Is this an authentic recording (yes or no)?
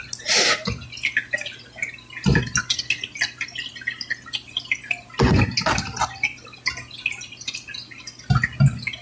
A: yes